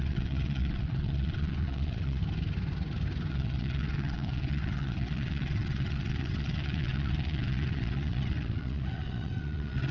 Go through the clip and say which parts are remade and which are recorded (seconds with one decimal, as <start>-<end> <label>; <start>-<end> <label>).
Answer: 0.0-2.2 remade; 2.2-3.3 recorded; 3.3-9.9 remade